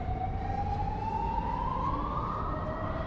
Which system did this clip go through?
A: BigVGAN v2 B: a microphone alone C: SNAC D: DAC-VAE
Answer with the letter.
B